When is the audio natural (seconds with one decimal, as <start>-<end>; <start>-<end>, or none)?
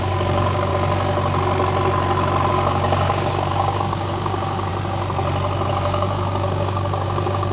0.7-2.5; 4.7-5.7